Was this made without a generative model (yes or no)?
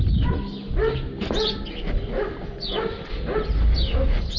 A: yes